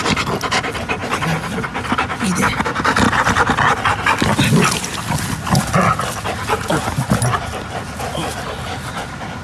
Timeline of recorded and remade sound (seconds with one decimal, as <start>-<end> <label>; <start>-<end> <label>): 0.0-9.4 recorded